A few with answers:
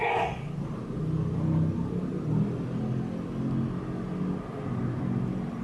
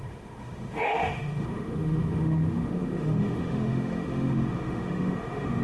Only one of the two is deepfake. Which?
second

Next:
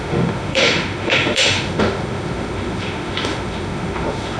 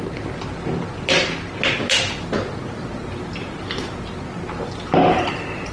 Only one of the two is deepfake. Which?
first